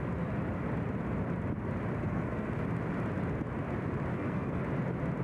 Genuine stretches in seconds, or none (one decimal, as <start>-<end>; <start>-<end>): 0.0-2.0; 2.5-4.1; 4.6-5.2